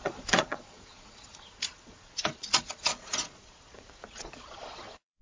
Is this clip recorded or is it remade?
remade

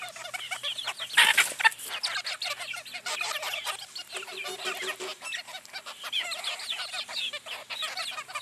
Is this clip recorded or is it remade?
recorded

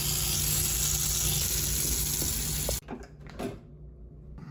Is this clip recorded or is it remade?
recorded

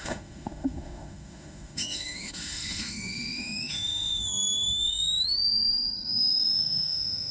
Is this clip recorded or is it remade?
remade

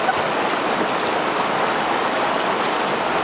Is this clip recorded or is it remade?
recorded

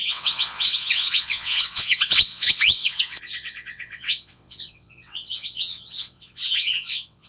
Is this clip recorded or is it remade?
remade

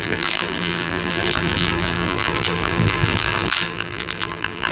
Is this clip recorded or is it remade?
remade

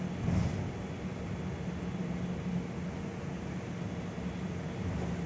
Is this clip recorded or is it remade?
recorded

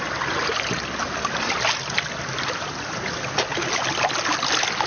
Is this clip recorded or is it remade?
recorded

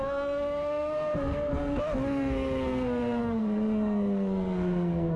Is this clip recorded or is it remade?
remade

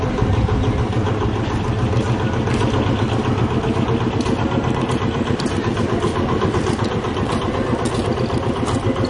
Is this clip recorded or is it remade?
recorded